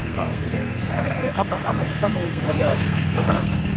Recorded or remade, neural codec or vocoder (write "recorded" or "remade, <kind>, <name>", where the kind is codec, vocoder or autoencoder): remade, codec, SNAC